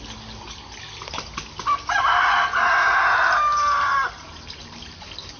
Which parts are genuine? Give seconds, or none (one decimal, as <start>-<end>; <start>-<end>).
0.0-3.5; 4.8-5.4